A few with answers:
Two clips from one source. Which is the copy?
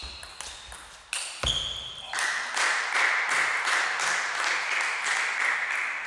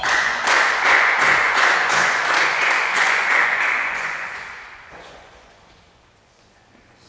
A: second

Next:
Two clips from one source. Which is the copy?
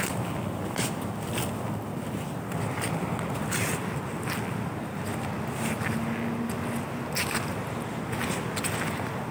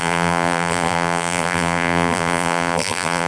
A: second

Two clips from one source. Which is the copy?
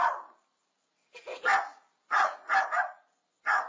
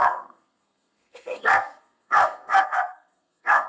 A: second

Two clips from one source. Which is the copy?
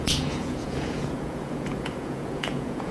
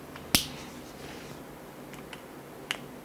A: first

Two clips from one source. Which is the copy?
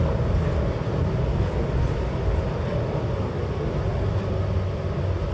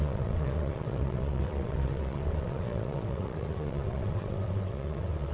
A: second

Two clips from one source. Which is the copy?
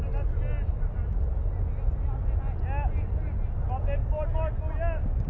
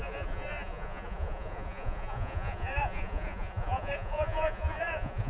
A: second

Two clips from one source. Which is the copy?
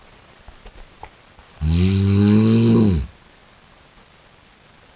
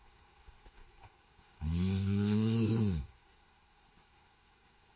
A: second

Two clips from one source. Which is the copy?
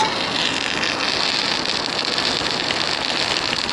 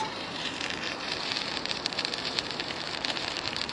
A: second